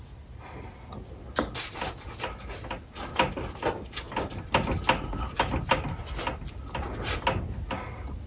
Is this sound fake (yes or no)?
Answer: no